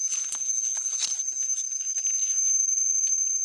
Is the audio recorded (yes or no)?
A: yes